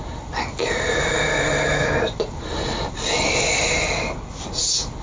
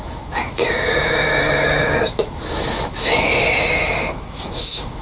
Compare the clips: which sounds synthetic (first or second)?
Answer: second